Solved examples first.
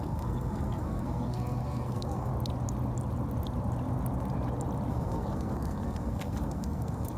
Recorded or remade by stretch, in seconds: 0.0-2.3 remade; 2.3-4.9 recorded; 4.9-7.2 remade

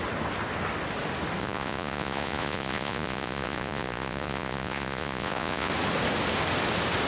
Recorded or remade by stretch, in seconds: 0.0-1.4 recorded; 1.4-5.7 remade; 5.7-7.1 recorded

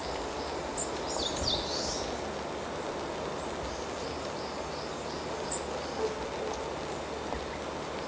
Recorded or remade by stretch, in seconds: 0.0-8.1 recorded

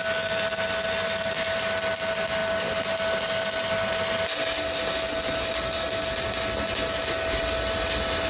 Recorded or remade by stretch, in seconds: 0.0-8.3 recorded

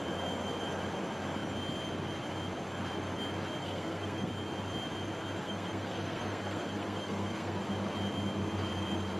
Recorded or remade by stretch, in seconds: 0.0-3.6 recorded; 3.6-4.3 remade; 4.3-5.4 recorded; 5.4-7.6 remade; 7.6-9.2 recorded